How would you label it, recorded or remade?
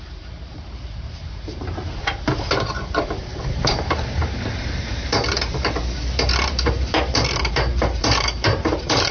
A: remade